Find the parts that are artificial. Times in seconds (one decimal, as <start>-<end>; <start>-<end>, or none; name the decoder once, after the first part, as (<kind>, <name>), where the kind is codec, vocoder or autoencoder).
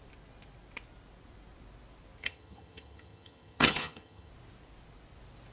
2.2-4.3 (vocoder, HiFi-GAN)